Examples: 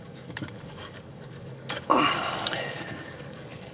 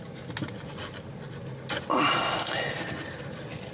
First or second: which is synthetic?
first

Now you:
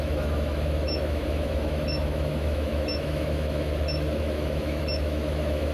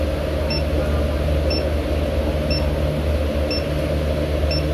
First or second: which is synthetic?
first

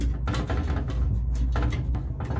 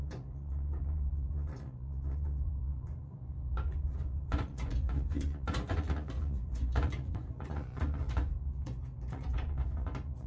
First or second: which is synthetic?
second